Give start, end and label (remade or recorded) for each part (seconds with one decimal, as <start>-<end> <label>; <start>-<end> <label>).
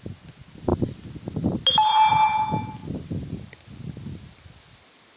0.0-5.2 recorded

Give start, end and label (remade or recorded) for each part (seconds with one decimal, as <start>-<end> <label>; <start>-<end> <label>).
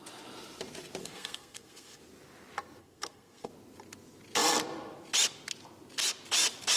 0.0-1.0 recorded; 1.0-2.0 remade; 2.0-2.8 recorded; 2.8-3.5 remade; 3.5-6.8 recorded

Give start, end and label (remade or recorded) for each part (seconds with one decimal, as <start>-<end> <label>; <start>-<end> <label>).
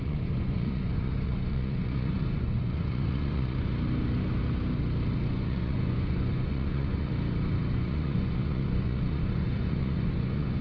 0.0-3.7 remade; 3.7-5.3 recorded; 5.3-7.1 remade; 7.1-7.7 recorded; 7.7-10.6 remade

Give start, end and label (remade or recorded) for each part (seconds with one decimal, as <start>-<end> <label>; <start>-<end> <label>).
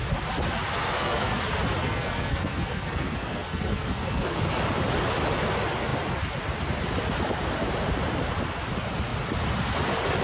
0.0-0.7 recorded; 0.7-1.4 remade; 1.4-1.8 recorded; 1.8-4.4 remade; 4.4-10.2 recorded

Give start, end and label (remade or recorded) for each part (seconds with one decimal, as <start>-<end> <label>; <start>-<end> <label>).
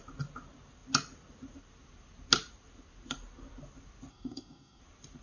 0.0-4.1 recorded; 4.1-4.8 remade; 4.8-5.2 recorded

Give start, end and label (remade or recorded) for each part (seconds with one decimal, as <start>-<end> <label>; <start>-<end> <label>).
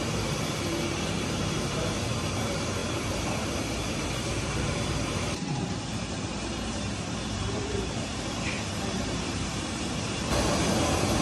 0.0-11.2 remade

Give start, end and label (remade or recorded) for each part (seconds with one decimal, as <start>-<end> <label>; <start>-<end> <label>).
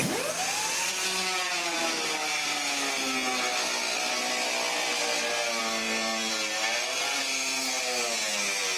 0.0-8.8 recorded